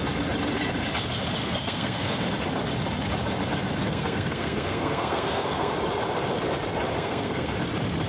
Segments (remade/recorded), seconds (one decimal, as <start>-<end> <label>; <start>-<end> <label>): 0.0-1.4 recorded; 1.4-2.2 remade; 2.2-3.8 recorded; 3.8-5.7 remade; 5.7-6.9 recorded; 6.9-7.5 remade; 7.5-8.1 recorded